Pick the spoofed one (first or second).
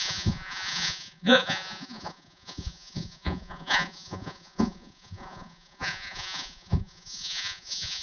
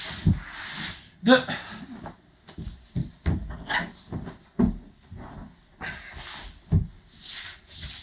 first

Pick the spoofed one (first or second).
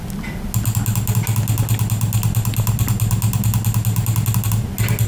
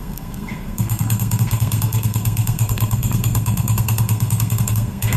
second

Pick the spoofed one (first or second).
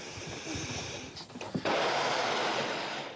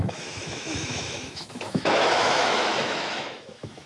second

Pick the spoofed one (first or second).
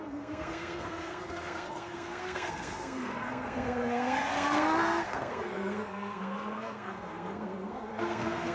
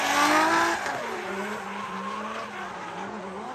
first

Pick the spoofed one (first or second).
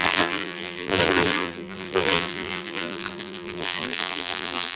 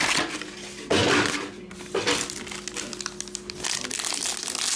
first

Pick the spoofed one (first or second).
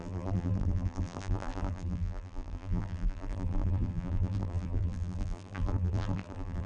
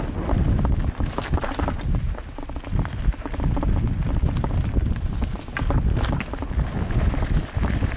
first